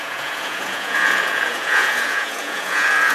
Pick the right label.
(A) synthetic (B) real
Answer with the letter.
A